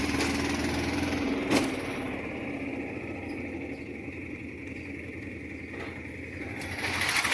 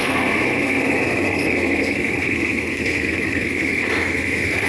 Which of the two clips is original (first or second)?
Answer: first